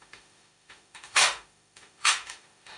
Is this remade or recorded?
remade